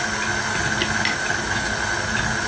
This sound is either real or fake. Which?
real